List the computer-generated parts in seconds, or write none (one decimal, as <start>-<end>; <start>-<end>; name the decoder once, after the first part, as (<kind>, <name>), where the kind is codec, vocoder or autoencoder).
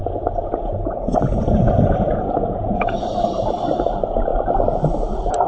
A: 0.0-3.3 (vocoder, Vocos)